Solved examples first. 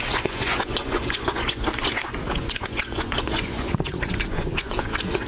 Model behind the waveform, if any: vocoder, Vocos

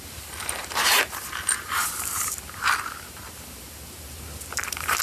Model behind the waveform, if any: vocoder, BigVGAN v2